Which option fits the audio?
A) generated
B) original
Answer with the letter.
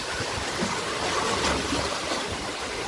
A